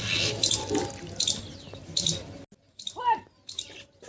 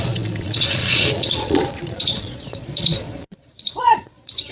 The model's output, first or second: second